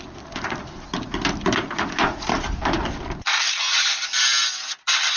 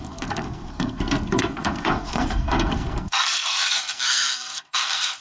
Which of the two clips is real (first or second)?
first